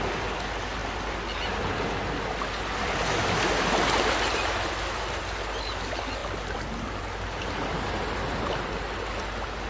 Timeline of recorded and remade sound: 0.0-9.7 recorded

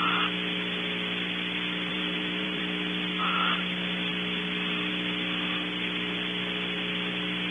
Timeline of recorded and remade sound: 0.0-1.9 recorded; 1.9-2.6 remade; 2.6-7.5 recorded

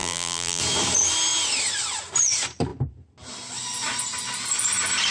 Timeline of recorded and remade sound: 0.0-0.6 remade; 0.6-5.1 recorded

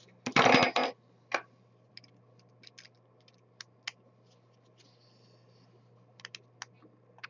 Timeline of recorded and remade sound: 0.0-7.3 recorded

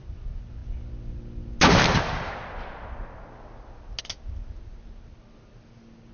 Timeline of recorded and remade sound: 0.0-6.1 recorded